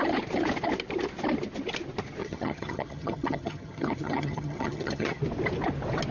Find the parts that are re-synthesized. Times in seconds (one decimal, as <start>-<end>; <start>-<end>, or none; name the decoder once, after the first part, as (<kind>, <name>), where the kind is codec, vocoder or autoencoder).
2.2-5.2 (vocoder, HiFi-GAN)